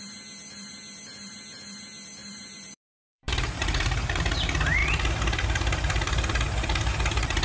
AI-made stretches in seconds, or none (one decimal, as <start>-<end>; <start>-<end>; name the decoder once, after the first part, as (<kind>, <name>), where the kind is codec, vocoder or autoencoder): 2.2-4.2 (vocoder, BigVGAN v2)